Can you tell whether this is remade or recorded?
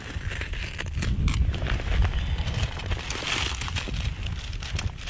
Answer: recorded